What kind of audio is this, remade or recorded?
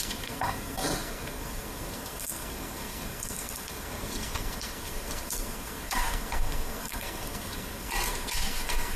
remade